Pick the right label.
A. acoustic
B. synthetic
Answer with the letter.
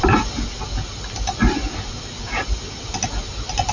A